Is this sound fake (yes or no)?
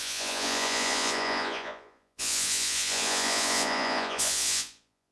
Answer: yes